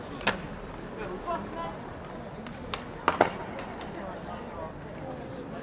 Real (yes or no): yes